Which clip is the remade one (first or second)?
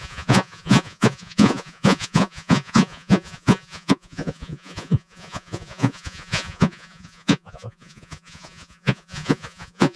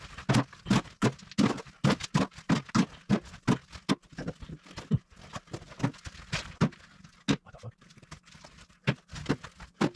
first